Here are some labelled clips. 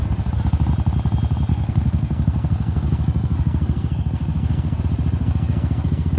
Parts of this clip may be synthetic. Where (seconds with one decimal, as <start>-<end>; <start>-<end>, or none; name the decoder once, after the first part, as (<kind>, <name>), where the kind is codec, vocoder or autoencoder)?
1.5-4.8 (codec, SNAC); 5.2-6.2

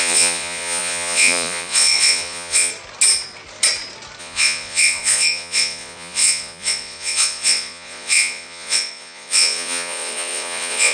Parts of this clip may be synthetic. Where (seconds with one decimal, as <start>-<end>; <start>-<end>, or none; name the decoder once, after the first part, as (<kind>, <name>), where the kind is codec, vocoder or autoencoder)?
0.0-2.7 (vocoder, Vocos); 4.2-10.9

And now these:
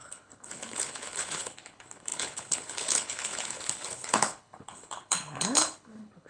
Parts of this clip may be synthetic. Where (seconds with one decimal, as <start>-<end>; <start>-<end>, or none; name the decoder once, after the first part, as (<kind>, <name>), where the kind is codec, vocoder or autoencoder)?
0.0-6.3 (codec, HILCodec)